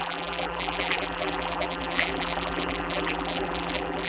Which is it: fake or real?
fake